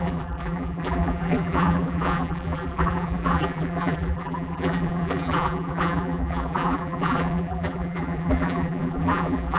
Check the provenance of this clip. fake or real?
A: fake